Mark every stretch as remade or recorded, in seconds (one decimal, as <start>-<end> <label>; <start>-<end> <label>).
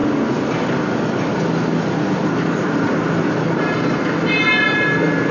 0.0-5.3 recorded